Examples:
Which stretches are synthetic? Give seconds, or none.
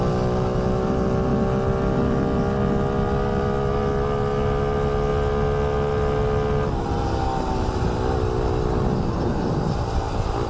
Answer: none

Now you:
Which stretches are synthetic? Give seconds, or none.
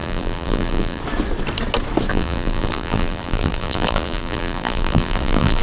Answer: 0.0-1.0 (vocoder, BigVGAN v2); 2.1-5.6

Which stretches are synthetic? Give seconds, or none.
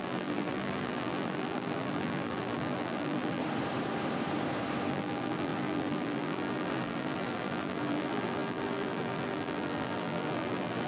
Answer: 0.0-3.4 (vocoder, BigVGAN v2); 4.9-10.9